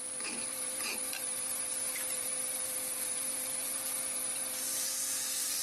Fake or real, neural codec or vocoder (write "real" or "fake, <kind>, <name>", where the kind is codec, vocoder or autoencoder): fake, vocoder, BigVGAN v2